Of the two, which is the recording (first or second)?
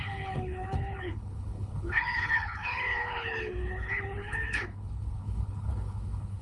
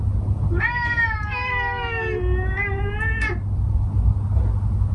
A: second